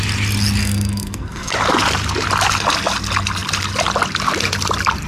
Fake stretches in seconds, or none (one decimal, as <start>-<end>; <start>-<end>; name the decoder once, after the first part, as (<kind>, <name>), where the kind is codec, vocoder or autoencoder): 0.6-1.5 (codec, SNAC)